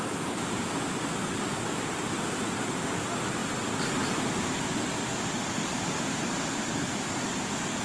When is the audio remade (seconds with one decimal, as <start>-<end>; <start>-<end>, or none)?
none